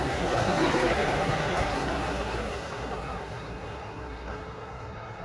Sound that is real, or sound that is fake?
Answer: fake